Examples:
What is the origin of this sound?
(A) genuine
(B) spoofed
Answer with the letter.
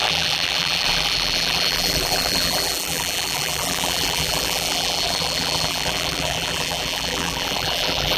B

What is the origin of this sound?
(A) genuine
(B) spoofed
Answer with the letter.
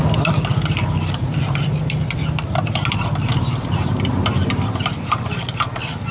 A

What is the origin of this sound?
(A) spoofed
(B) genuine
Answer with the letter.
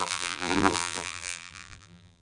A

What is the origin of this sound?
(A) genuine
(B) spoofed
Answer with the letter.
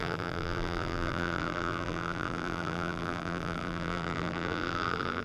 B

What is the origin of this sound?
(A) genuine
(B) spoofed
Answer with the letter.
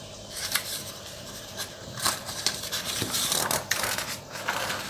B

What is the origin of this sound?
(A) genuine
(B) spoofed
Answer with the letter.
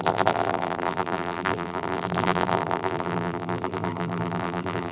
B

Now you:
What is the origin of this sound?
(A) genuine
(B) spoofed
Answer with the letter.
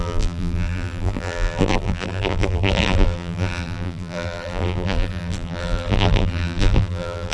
B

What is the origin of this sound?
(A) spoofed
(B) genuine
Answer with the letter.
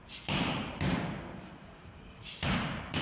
A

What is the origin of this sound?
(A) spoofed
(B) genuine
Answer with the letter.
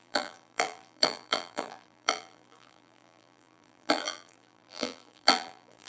A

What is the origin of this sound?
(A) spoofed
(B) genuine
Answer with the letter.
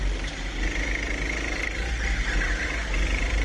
B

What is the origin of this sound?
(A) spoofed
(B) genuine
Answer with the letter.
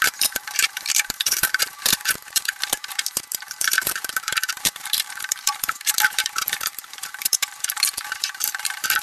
A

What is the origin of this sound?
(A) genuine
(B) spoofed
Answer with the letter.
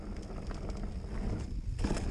A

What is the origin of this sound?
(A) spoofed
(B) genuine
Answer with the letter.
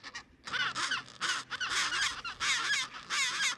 B